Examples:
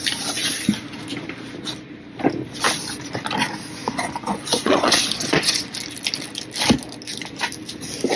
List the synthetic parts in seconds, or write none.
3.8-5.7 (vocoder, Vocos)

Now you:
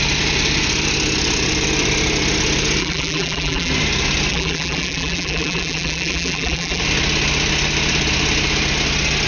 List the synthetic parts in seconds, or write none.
2.8-3.7 (vocoder, BigVGAN v2); 4.3-6.8

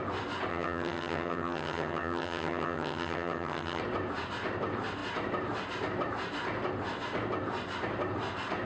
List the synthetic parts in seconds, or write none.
0.5-3.8 (vocoder, HiFi-GAN)

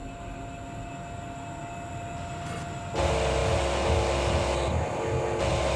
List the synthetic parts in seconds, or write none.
none

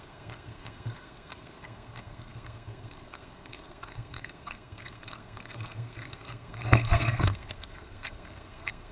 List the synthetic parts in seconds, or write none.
0.0-8.9 (codec, SNAC)

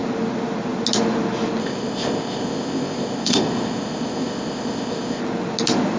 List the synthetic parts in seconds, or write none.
1.6-5.2 (codec, ZipCodec)